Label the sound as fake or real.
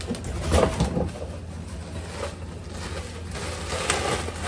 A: real